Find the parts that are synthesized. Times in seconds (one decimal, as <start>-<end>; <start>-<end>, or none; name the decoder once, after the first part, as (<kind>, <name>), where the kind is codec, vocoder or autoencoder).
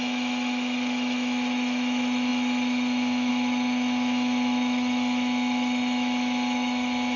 0.0-7.2 (autoencoder, DAC-VAE)